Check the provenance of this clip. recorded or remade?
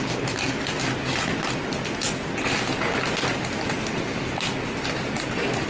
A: recorded